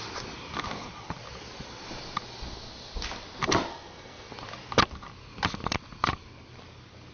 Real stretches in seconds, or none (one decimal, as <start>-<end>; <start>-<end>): 0.0-3.7; 4.3-7.1